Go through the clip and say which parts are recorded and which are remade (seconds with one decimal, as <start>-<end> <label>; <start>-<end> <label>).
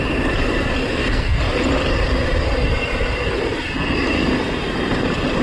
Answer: 0.0-0.9 recorded; 0.9-1.4 remade; 1.4-5.4 recorded